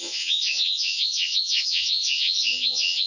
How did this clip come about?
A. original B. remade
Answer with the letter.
B